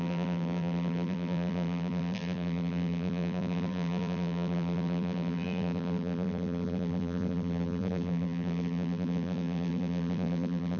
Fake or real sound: fake